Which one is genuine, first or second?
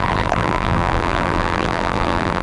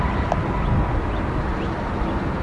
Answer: second